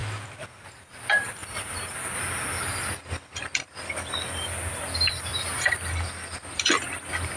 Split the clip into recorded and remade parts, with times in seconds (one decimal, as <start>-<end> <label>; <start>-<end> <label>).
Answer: 0.0-7.4 recorded